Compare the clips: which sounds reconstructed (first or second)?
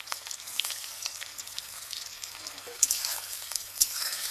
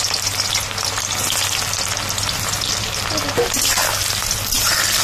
first